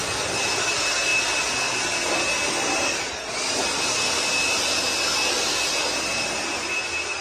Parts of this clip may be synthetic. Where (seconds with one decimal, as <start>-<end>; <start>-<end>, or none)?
none